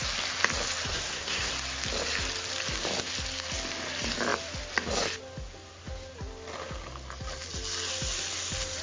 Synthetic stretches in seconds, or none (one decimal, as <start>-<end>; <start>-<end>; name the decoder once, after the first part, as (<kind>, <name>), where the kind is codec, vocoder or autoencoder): 0.9-1.5 (codec, SNAC)